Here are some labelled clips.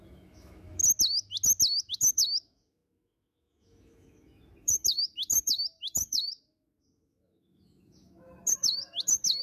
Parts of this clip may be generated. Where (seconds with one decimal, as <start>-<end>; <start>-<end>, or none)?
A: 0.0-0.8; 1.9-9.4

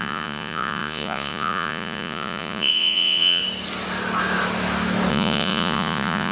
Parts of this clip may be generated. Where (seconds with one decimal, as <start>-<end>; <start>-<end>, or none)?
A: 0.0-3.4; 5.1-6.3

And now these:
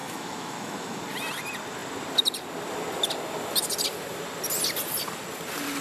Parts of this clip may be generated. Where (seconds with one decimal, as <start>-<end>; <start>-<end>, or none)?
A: 0.0-1.0

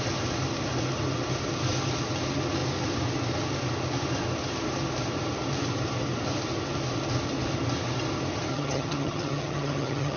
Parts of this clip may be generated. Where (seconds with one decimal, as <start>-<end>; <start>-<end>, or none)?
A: 8.5-10.2

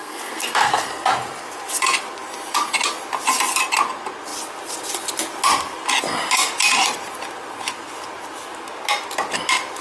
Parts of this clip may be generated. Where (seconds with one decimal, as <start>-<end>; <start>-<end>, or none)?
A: 0.0-0.7

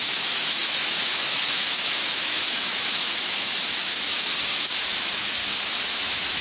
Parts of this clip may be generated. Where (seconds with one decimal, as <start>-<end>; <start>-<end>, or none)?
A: 0.0-5.4; 5.9-6.4